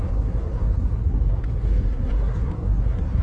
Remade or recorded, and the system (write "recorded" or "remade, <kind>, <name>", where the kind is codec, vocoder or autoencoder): remade, codec, SNAC